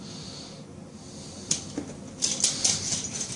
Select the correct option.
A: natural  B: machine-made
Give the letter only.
A